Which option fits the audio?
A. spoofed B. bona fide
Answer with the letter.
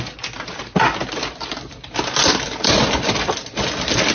B